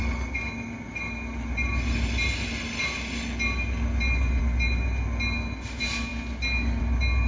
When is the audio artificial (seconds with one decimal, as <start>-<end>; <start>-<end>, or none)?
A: none